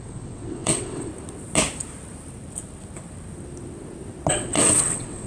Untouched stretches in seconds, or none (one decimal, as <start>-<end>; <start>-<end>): 1.1-4.3